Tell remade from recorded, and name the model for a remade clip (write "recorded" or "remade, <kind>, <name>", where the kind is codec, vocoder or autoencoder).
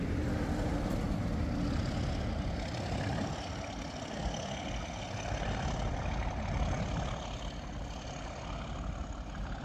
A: recorded